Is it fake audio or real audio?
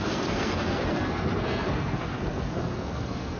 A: fake